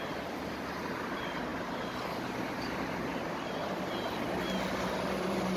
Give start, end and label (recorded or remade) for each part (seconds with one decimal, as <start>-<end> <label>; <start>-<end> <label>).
0.0-5.6 recorded